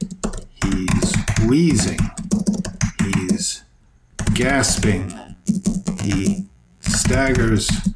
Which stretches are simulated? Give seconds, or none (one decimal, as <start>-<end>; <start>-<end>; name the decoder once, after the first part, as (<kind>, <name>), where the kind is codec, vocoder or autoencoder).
5.0-6.9 (vocoder, BigVGAN v2)